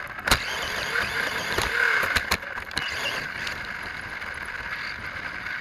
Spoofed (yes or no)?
no